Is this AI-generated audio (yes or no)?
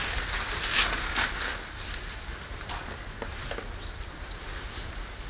no